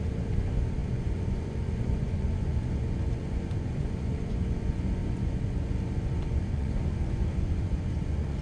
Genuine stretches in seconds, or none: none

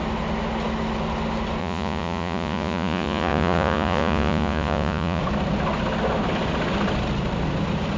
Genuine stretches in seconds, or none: 0.0-1.6; 5.2-8.0